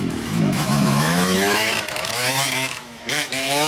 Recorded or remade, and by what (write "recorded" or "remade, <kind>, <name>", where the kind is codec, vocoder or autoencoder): remade, autoencoder, DAC-VAE